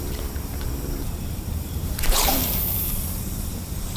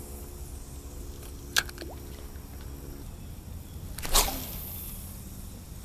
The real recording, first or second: second